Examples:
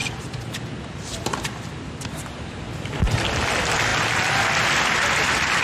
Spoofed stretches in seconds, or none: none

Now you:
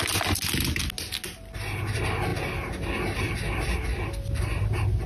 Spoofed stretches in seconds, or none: none